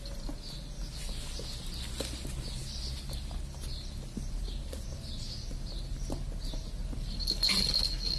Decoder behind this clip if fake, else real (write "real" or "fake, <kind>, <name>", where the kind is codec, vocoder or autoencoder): real